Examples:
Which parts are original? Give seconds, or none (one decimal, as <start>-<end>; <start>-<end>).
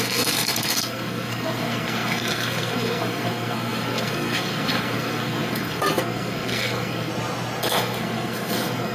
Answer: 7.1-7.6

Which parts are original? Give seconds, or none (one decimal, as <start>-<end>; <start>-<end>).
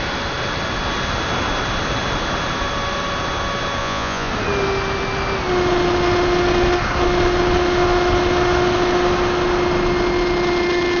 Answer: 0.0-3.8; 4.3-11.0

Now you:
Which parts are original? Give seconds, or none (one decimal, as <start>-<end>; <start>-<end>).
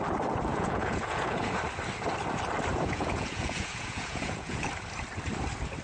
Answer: 0.0-0.5; 1.6-2.7; 4.7-5.8